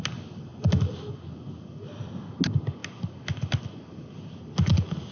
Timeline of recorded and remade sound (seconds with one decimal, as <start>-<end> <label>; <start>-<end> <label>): 0.0-5.1 recorded